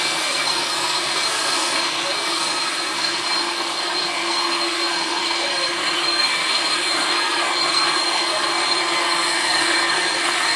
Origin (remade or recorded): remade